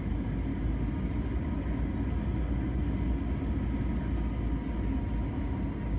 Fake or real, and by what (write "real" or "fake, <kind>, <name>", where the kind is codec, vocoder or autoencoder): real